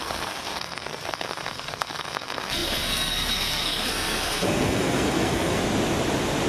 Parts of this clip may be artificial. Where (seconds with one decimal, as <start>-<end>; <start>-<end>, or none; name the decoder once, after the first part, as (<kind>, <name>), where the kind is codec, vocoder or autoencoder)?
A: 0.0-5.6 (codec, SNAC)